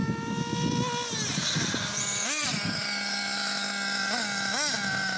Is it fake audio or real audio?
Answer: real